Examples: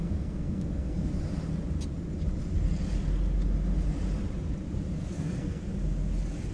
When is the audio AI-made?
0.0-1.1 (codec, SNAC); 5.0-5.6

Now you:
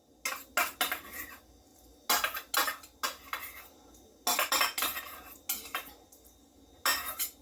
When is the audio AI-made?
none

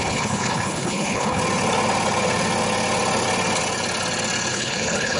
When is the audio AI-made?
0.0-1.4 (codec, HILCodec); 4.5-5.2